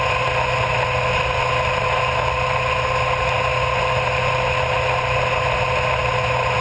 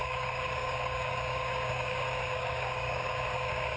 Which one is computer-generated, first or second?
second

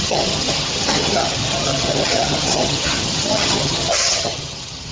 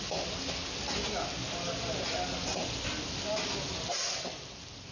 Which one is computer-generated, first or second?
first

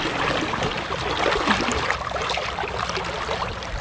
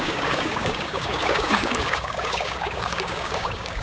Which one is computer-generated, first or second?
second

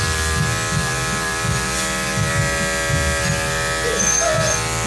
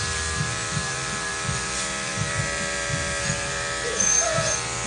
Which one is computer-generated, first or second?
second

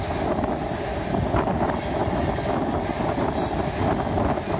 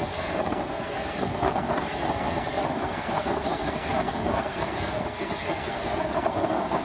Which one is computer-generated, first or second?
second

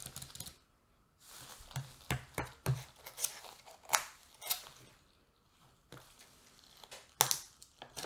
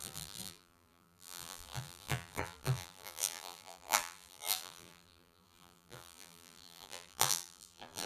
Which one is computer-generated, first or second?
second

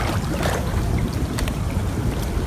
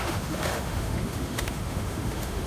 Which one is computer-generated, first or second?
second